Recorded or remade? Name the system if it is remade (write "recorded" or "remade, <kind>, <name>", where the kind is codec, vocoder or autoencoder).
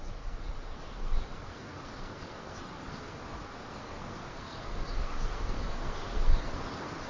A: remade, codec, SNAC